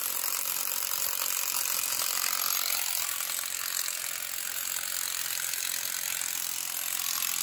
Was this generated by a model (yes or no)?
no